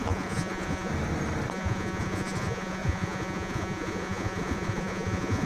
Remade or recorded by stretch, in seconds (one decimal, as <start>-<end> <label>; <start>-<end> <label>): 0.0-0.9 remade; 0.9-1.5 recorded; 1.5-5.5 remade